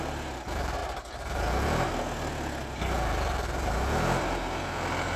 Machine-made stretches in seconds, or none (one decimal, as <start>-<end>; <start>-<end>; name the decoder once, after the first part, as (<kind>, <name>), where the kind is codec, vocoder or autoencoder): none